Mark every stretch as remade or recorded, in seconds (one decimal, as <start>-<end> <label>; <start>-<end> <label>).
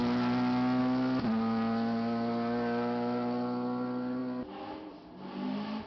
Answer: 0.0-5.9 recorded